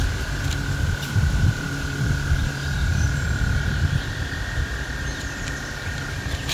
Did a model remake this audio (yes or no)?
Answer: no